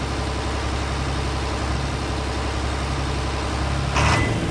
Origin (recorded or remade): recorded